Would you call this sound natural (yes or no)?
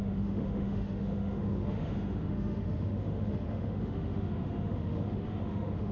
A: no